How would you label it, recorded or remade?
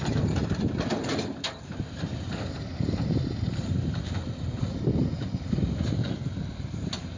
remade